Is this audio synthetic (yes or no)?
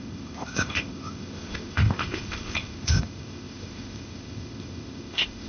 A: yes